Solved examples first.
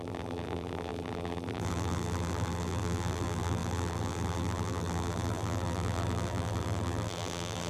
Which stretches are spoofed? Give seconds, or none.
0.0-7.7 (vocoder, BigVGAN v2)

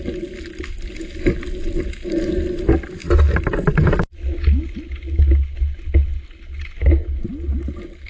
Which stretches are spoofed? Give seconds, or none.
none

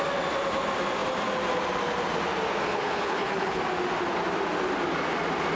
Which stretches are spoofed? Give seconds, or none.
2.6-3.6 (codec, HILCodec)

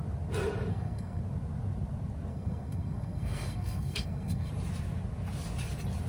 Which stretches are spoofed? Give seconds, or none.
0.7-1.2 (codec, SNAC); 2.3-4.5